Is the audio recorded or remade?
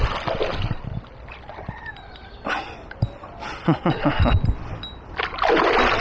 recorded